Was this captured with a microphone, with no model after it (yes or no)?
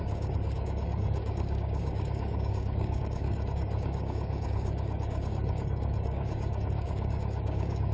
no